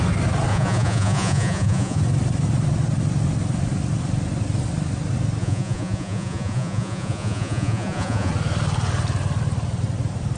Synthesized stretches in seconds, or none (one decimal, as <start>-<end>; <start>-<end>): 0.5-2.0; 5.4-8.3